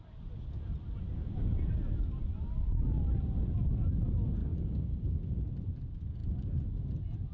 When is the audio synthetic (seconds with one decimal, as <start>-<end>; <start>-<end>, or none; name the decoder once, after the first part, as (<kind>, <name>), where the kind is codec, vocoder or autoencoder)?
4.4-5.5 (codec, DAC)